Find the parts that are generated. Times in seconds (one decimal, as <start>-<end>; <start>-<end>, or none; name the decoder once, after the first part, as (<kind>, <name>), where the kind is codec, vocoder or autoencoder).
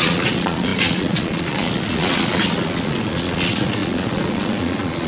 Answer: 0.0-5.1 (vocoder, Vocos)